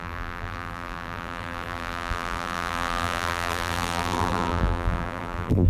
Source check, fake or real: fake